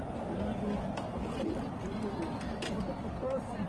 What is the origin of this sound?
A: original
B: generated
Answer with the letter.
A